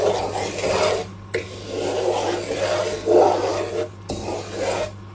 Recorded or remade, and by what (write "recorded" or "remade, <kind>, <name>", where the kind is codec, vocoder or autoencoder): recorded